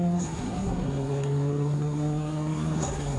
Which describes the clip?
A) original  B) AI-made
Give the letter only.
B